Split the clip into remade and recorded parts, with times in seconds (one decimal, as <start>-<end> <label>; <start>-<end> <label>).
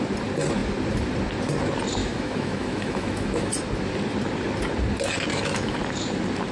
0.0-2.0 recorded; 2.0-3.5 remade; 3.5-5.3 recorded; 5.3-5.8 remade; 5.8-6.5 recorded